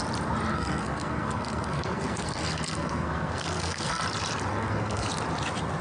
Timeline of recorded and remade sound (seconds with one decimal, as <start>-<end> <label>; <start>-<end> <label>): 0.0-0.5 recorded; 0.5-4.0 remade; 4.0-4.5 recorded; 4.5-5.1 remade; 5.1-5.8 recorded